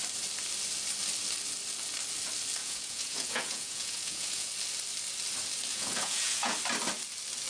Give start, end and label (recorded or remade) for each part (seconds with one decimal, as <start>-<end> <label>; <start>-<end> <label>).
0.0-2.6 recorded; 2.6-4.5 remade; 4.5-5.7 recorded; 5.7-6.5 remade; 6.5-7.5 recorded